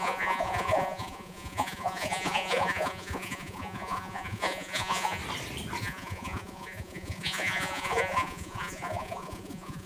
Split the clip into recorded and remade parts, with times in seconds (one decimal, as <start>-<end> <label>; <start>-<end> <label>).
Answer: 0.0-5.2 remade; 5.2-5.8 recorded; 5.8-9.9 remade

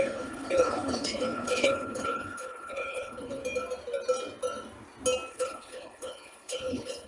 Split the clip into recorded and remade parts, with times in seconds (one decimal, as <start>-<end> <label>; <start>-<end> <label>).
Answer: 0.0-3.4 remade; 3.4-5.3 recorded; 5.3-7.1 remade

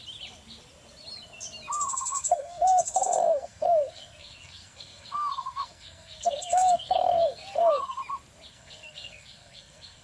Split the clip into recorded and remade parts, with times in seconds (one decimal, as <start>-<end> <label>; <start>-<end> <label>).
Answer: 0.0-1.9 recorded; 1.9-8.0 remade; 8.0-8.5 recorded; 8.5-10.0 remade

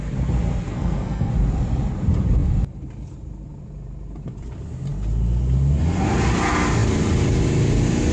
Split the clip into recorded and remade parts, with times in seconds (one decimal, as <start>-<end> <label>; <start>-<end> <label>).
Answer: 0.0-0.7 recorded; 0.7-1.3 remade; 1.3-8.1 recorded

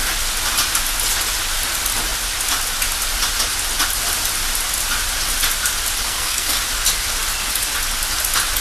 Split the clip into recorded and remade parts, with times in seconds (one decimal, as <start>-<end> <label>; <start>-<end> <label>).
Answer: 0.0-6.0 recorded; 6.0-6.6 remade; 6.6-8.6 recorded